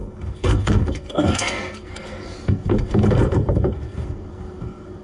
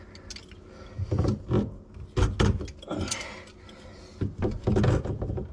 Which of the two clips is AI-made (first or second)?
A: first